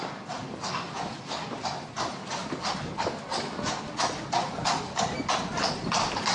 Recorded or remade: recorded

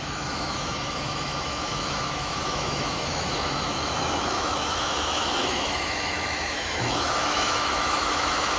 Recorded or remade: remade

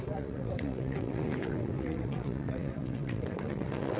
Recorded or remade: remade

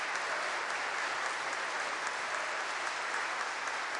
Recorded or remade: recorded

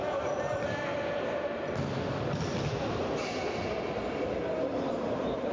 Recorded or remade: recorded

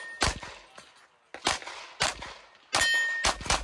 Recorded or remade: recorded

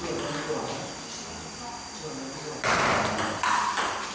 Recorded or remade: recorded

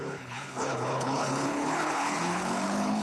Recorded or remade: remade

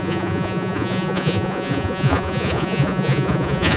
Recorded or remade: remade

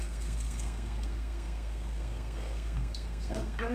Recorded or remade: remade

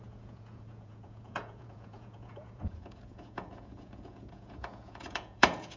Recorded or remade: remade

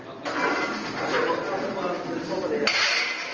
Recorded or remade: recorded